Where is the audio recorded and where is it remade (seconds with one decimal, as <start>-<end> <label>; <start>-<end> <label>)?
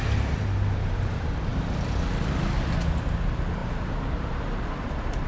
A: 0.0-1.5 recorded; 1.5-2.7 remade; 2.7-3.6 recorded; 3.6-5.3 remade